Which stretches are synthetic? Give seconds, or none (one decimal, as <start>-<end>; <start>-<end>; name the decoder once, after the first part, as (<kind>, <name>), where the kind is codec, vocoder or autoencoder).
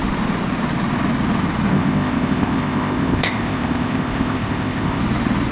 1.7-5.0 (codec, ZipCodec)